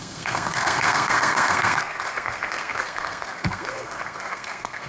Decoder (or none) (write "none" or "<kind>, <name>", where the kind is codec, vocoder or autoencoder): codec, SNAC